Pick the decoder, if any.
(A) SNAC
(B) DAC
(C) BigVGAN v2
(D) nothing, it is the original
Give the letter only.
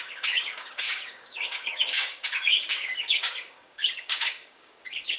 B